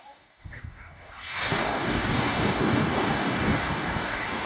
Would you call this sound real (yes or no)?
no